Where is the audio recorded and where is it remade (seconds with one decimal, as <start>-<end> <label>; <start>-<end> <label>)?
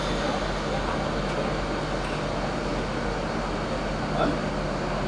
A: 0.0-5.1 recorded